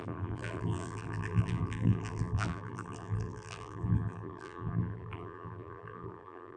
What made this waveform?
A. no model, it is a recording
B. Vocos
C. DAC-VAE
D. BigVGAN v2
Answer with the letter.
D